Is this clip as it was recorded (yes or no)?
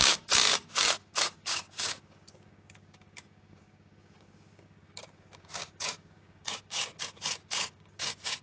no